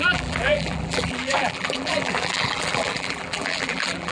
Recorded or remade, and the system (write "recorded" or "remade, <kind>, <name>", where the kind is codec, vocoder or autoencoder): remade, vocoder, BigVGAN v2